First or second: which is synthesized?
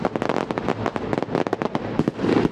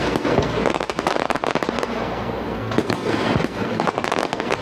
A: second